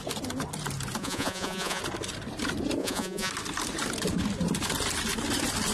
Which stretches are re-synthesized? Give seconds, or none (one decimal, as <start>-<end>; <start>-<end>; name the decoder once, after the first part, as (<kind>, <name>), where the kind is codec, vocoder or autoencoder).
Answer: 1.0-1.8 (vocoder, Vocos); 2.8-3.3